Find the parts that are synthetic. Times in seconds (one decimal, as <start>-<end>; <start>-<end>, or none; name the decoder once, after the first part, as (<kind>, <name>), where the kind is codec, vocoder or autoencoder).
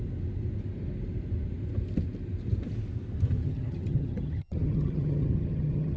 3.4-6.0 (vocoder, HiFi-GAN)